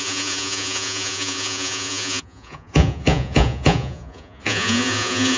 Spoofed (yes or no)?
yes